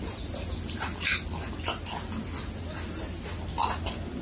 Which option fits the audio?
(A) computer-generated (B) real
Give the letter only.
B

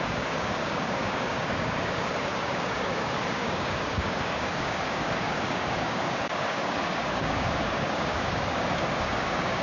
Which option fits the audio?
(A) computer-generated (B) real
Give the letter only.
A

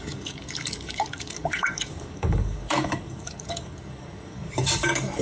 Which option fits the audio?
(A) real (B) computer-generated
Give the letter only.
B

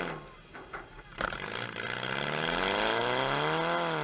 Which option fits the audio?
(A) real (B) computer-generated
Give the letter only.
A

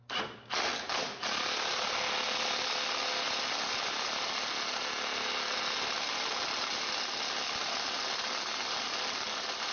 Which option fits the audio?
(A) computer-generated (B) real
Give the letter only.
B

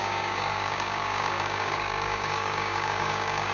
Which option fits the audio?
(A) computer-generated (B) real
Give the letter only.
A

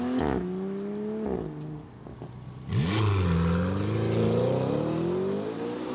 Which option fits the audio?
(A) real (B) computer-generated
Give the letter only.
A